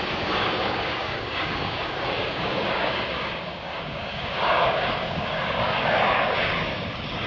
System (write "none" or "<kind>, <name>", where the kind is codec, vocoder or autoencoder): codec, DAC